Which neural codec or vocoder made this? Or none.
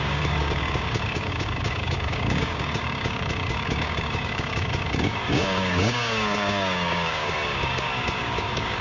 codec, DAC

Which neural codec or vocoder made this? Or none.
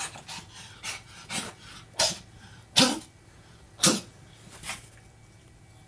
none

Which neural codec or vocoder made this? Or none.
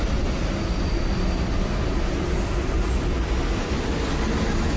none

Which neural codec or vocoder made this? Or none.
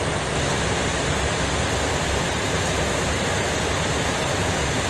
none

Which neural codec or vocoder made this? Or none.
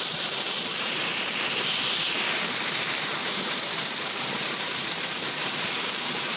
vocoder, BigVGAN v2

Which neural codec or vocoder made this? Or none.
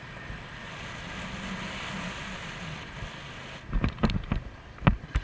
none